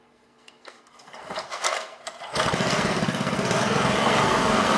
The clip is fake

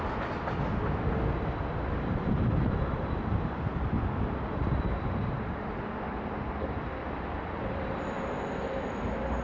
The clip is real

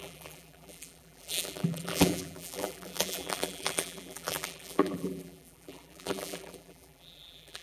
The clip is fake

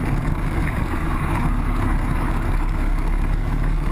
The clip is fake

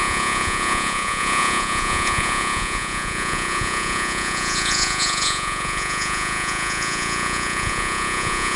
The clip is fake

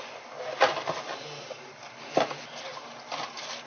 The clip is real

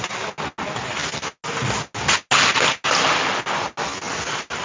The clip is real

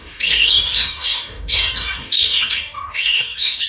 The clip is fake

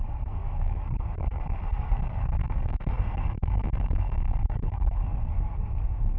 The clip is fake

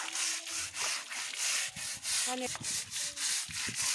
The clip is real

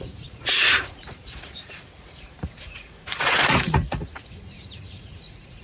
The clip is fake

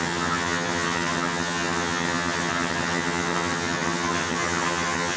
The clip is fake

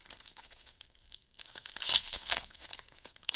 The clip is fake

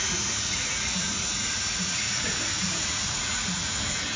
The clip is fake